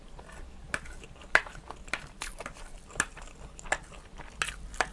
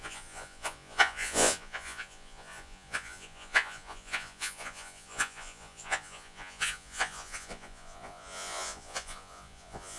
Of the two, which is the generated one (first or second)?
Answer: second